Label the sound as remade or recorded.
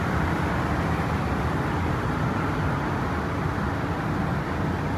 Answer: recorded